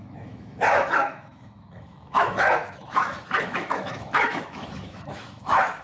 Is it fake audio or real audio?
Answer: fake